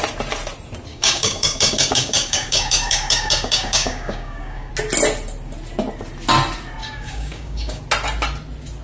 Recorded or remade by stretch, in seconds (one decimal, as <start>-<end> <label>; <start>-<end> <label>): 0.0-0.9 recorded; 0.9-4.7 remade; 4.7-6.8 recorded; 6.8-7.8 remade; 7.8-8.8 recorded